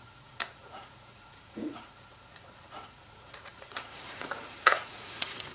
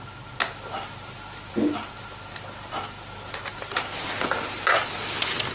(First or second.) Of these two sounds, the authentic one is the second